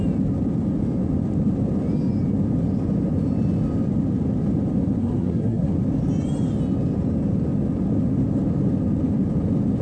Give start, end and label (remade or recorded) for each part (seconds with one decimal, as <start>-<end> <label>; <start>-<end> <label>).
0.0-5.0 recorded; 5.0-5.7 remade; 5.7-9.8 recorded